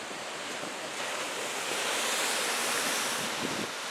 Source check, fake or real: real